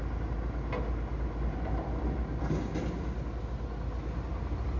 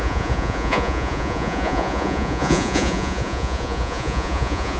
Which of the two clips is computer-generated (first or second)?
second